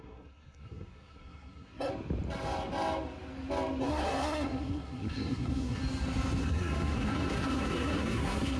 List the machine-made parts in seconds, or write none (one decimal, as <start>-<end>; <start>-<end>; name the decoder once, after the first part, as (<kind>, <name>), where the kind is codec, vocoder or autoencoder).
0.0-1.9 (codec, SNAC); 3.8-5.8; 6.4-8.6